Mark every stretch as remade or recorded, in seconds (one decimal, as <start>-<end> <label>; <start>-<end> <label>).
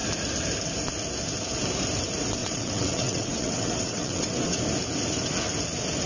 0.0-2.4 recorded; 2.4-4.6 remade; 4.6-6.1 recorded